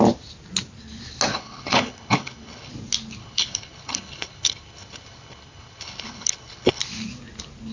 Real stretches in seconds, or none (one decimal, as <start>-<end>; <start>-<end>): 0.0-1.3; 2.7-3.2; 6.8-7.7